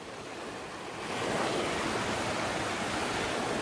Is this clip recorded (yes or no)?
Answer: yes